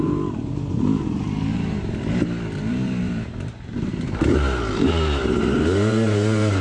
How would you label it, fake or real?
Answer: fake